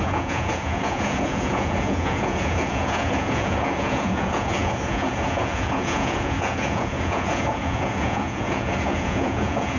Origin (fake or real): fake